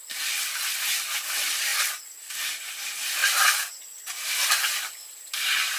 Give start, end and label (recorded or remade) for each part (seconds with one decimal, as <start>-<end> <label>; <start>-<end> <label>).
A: 0.0-5.8 recorded